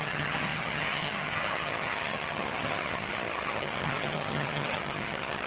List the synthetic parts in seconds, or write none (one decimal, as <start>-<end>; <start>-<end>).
0.0-5.5